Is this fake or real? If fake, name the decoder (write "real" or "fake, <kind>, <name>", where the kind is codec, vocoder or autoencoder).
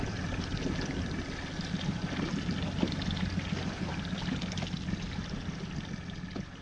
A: real